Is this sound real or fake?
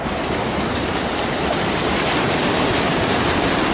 real